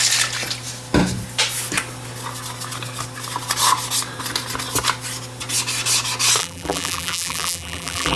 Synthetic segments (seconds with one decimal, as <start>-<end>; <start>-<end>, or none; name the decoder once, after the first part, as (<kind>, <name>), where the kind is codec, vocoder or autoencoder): 6.4-8.2 (vocoder, BigVGAN v2)